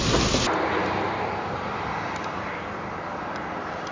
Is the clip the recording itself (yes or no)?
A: yes